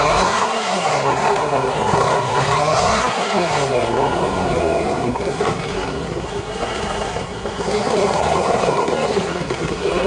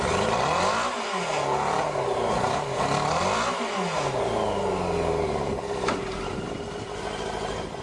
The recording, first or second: second